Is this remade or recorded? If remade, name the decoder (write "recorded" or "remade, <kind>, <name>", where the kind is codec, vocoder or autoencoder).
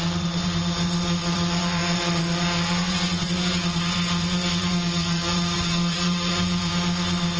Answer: remade, vocoder, Vocos